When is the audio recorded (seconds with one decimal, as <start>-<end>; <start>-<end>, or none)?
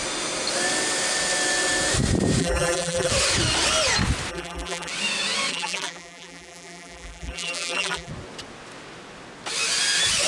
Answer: 0.0-2.4; 3.1-4.3; 4.9-5.5; 8.1-10.3